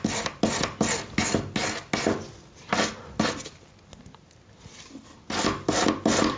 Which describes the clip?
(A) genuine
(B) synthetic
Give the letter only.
A